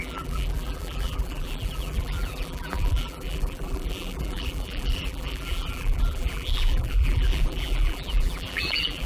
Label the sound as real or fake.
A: fake